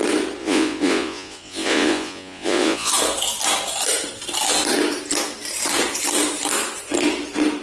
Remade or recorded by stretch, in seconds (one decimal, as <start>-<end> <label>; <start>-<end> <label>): 0.0-0.4 recorded; 0.4-2.9 remade; 2.9-7.6 recorded